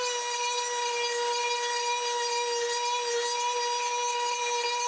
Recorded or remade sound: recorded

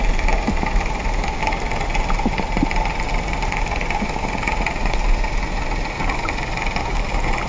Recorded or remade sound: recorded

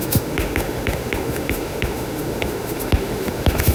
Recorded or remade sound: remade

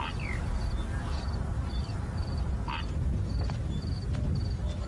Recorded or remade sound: recorded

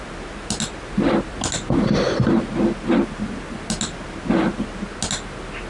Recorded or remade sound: recorded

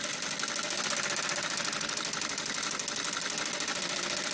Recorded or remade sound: recorded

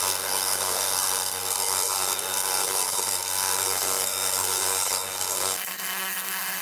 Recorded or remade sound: remade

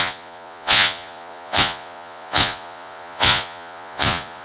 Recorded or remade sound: remade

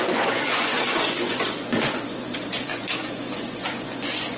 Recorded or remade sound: remade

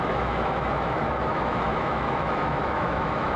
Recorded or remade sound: remade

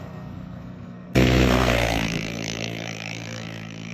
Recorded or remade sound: remade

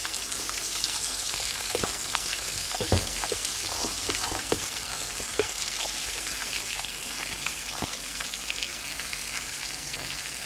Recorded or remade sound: remade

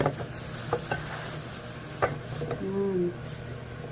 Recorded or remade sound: recorded